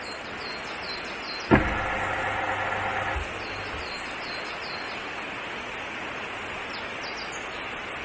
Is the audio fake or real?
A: real